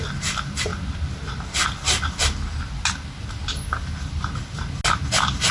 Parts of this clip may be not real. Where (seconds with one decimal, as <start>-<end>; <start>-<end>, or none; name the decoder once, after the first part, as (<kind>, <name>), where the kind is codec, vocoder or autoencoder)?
none